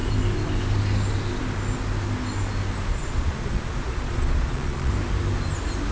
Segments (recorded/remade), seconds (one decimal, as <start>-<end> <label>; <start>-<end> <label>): 0.0-2.9 recorded; 2.9-4.9 remade; 4.9-5.9 recorded